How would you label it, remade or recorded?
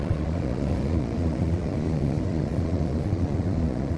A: remade